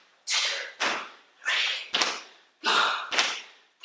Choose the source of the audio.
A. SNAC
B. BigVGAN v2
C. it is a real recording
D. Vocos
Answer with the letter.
C